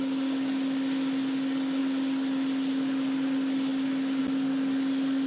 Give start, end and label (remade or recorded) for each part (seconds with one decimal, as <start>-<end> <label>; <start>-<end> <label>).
0.0-5.3 recorded